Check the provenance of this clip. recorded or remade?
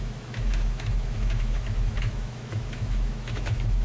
remade